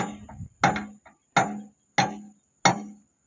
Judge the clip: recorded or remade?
recorded